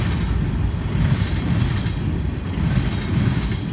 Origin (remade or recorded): recorded